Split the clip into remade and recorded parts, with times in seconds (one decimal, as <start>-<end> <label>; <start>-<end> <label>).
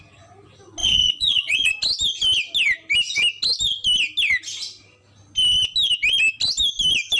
0.0-0.8 recorded; 0.8-1.7 remade; 1.7-7.2 recorded